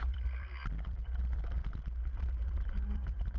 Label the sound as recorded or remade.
remade